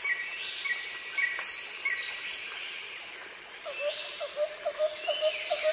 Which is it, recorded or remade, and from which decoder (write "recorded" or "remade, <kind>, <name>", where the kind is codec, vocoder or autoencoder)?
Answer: recorded